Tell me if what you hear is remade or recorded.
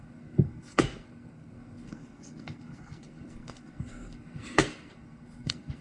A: remade